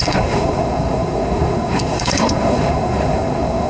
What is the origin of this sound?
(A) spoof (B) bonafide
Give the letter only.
A